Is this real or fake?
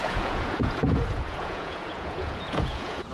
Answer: fake